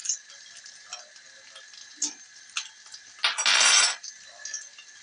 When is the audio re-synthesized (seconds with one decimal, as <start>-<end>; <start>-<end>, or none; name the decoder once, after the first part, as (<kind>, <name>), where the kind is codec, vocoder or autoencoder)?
none